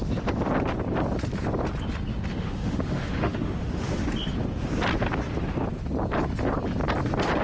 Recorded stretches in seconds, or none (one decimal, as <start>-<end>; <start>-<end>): 0.0-2.3; 4.0-7.4